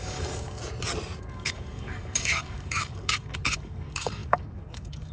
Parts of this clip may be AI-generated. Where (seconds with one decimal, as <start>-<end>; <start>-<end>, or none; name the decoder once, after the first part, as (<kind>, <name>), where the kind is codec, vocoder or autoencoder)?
0.0-0.6 (codec, DAC); 1.2-5.1